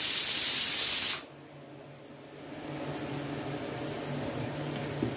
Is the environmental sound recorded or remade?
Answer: recorded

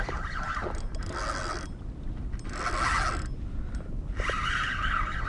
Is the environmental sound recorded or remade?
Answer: recorded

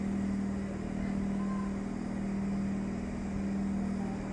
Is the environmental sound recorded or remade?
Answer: recorded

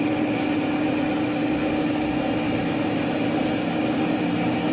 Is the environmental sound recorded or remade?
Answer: recorded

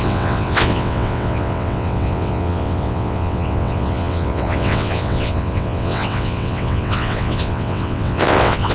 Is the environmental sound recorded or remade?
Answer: remade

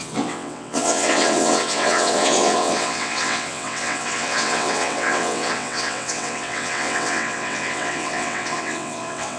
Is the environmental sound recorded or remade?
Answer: remade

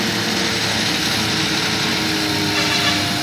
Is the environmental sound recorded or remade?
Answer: recorded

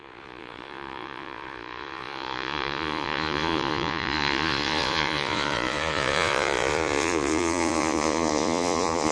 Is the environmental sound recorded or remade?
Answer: remade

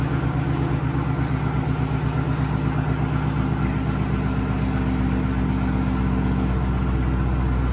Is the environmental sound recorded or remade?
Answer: recorded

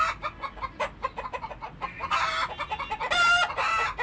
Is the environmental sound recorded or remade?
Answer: recorded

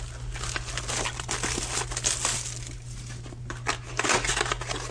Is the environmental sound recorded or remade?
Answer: recorded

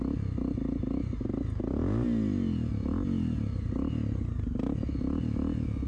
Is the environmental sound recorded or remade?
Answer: recorded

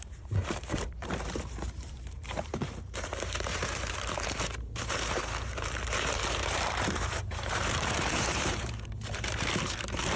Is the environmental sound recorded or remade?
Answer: remade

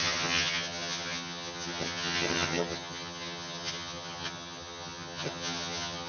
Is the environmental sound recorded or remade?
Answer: remade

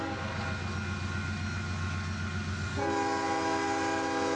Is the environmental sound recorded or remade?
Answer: recorded